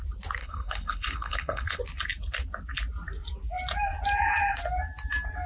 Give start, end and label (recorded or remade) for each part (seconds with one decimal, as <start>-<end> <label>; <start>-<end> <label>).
0.0-0.4 recorded; 0.4-1.8 remade; 1.8-5.5 recorded

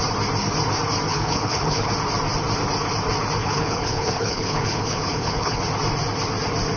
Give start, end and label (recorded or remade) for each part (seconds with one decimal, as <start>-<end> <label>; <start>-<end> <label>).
0.0-1.1 recorded; 1.1-1.9 remade; 1.9-3.4 recorded; 3.4-5.6 remade; 5.6-6.8 recorded

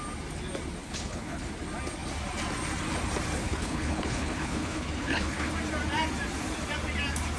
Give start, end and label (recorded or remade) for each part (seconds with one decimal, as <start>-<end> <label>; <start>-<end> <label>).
0.0-0.8 recorded; 0.8-1.5 remade; 1.5-3.4 recorded; 3.4-5.5 remade; 5.5-7.4 recorded